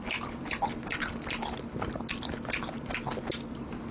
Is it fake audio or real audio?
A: real